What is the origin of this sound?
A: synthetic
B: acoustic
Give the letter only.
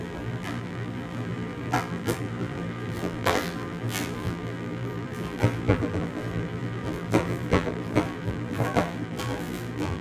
A